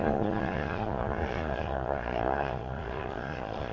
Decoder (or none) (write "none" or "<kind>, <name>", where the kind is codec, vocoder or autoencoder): vocoder, Vocos